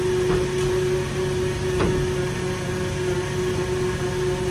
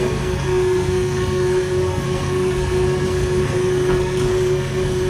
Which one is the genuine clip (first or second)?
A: first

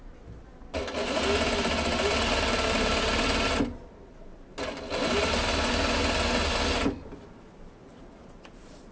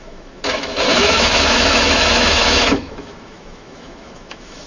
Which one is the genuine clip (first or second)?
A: first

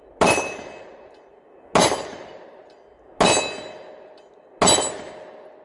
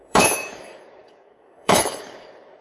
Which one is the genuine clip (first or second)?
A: first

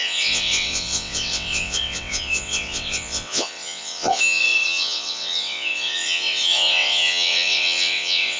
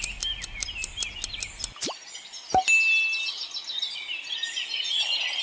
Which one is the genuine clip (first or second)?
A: second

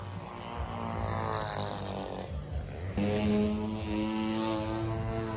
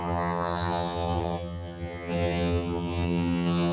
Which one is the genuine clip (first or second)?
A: first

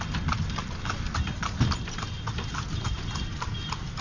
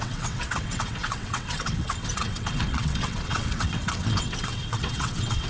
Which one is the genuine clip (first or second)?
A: first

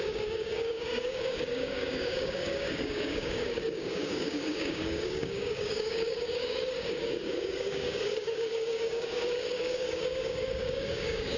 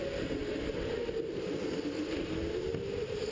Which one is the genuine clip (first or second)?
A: second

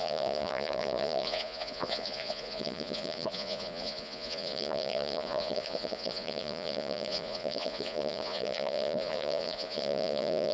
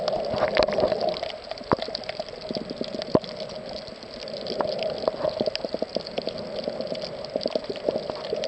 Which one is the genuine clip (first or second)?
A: second